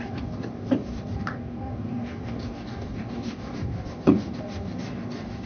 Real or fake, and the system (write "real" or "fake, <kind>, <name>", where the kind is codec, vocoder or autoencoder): fake, codec, DAC